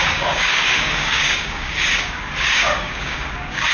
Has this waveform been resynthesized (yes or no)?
yes